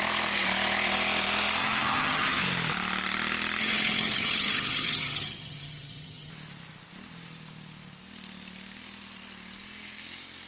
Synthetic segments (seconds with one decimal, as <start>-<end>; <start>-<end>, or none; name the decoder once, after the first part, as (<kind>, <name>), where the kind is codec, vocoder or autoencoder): 1.6-2.4 (vocoder, HiFi-GAN); 3.6-6.3